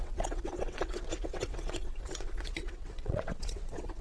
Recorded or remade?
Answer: remade